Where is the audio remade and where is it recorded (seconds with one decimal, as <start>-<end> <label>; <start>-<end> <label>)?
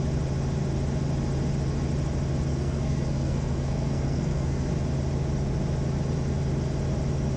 0.0-2.5 recorded; 2.5-4.7 remade; 4.7-7.4 recorded